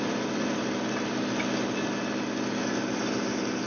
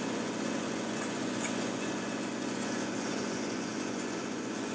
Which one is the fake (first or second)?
second